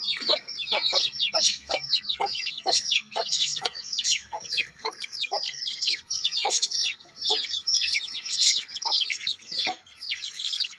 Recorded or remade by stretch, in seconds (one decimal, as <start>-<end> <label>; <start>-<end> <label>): 0.0-10.8 remade